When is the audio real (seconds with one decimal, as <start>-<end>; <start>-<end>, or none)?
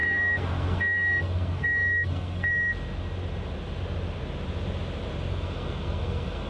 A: 2.5-5.3